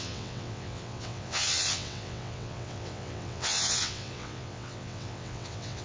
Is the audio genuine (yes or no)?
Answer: no